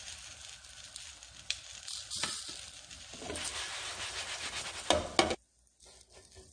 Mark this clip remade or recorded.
recorded